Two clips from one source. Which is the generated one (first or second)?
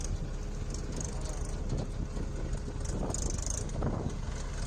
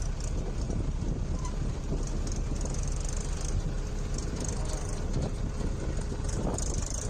second